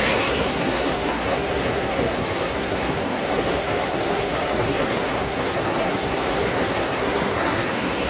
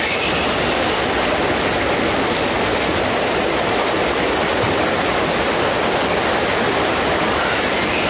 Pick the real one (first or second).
second